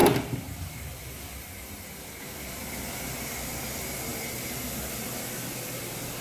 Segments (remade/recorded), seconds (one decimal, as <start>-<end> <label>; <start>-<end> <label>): 0.0-6.2 recorded